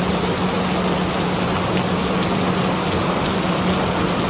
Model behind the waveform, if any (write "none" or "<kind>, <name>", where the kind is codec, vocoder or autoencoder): none